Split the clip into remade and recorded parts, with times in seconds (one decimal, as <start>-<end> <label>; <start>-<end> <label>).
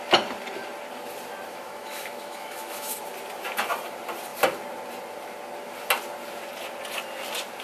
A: 0.0-1.5 recorded; 1.5-3.0 remade; 3.0-7.6 recorded